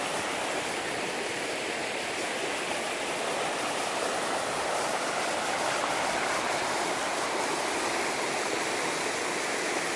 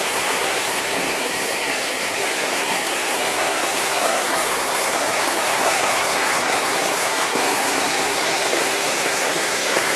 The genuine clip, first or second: first